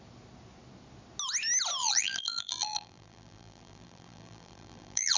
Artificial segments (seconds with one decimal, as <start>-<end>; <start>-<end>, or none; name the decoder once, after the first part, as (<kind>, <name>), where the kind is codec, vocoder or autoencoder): 1.8-5.2 (vocoder, BigVGAN v2)